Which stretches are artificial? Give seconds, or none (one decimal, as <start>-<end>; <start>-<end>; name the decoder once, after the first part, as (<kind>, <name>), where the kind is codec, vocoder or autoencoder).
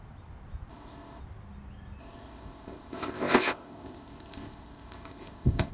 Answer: 0.7-1.2 (codec, ZipCodec); 2.0-5.7